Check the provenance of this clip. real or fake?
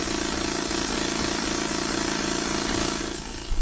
real